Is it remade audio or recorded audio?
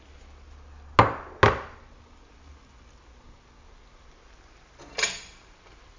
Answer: recorded